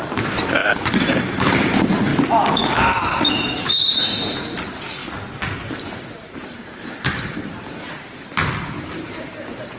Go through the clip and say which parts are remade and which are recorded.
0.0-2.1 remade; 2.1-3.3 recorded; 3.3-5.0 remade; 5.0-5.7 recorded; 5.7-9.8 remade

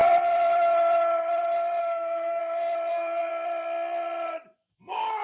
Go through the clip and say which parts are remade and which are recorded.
0.0-1.8 recorded; 1.8-2.4 remade; 2.4-2.9 recorded; 2.9-3.3 remade; 3.3-4.7 recorded; 4.7-5.2 remade

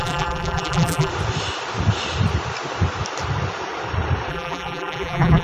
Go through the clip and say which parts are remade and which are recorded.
0.0-1.1 remade; 1.1-4.3 recorded; 4.3-5.4 remade

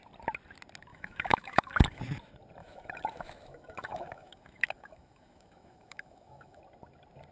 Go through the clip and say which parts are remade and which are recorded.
0.0-0.9 recorded; 0.9-2.0 remade; 2.0-2.6 recorded; 2.6-6.6 remade; 6.6-7.3 recorded

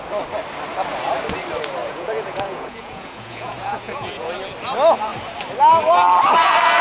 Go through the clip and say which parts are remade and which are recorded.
0.0-1.8 recorded; 1.8-4.3 remade; 4.3-6.8 recorded

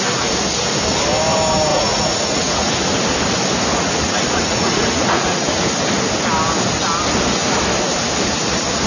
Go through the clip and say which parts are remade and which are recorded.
0.0-1.7 recorded; 1.7-2.8 remade; 2.8-3.7 recorded; 3.7-5.6 remade; 5.6-8.9 recorded

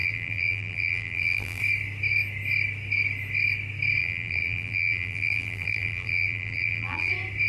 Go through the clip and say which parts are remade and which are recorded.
0.0-1.6 remade; 1.6-4.0 recorded; 4.0-7.1 remade; 7.1-7.5 recorded